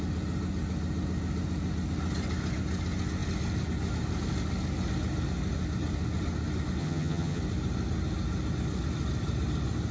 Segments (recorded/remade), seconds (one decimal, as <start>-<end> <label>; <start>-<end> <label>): 0.0-6.8 recorded; 6.8-7.4 remade; 7.4-9.9 recorded